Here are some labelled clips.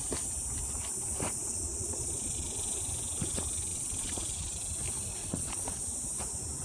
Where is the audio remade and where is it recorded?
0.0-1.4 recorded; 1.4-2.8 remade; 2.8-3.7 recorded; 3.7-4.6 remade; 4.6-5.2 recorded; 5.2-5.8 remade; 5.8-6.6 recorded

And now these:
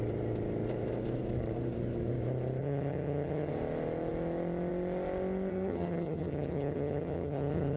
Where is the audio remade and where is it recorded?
0.0-2.6 recorded; 2.6-3.5 remade; 3.5-5.5 recorded; 5.5-7.8 remade

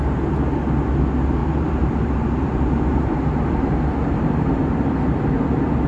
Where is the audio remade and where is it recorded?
0.0-1.4 recorded; 1.4-4.6 remade; 4.6-5.9 recorded

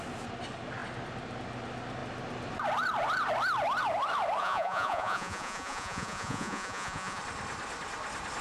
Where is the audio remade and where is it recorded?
0.0-4.4 recorded; 4.4-7.2 remade; 7.2-8.4 recorded

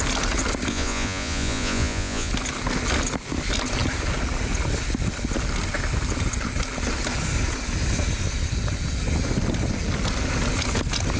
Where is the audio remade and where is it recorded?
0.0-0.7 recorded; 0.7-2.3 remade; 2.3-11.2 recorded

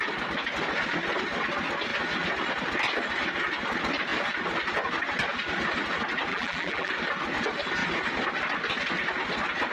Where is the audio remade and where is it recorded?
0.0-6.3 recorded; 6.3-6.9 remade; 6.9-9.7 recorded